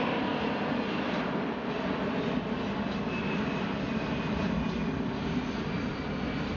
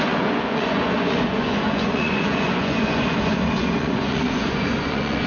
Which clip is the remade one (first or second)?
second